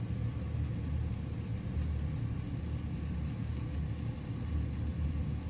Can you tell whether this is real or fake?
real